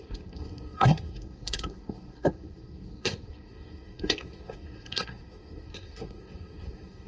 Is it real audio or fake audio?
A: fake